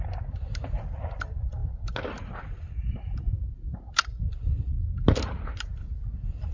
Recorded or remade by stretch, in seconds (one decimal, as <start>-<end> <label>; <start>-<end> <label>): 0.0-6.5 recorded